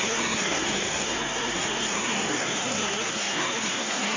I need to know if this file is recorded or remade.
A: remade